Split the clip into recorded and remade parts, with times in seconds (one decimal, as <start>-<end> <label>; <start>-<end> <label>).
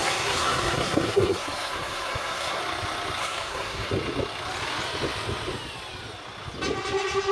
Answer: 0.0-2.6 remade; 2.6-3.2 recorded; 3.2-3.9 remade; 3.9-7.3 recorded